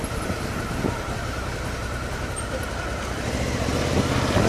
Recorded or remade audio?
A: recorded